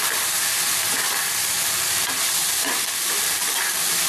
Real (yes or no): no